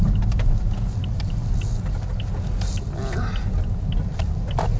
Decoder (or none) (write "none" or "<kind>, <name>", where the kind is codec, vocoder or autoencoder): none